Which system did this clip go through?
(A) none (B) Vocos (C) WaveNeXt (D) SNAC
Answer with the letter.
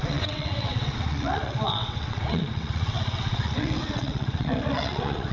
C